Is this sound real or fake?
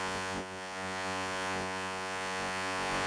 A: fake